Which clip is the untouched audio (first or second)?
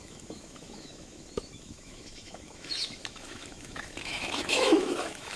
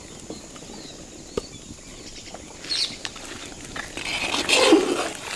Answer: second